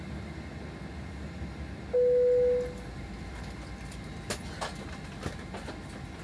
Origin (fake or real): real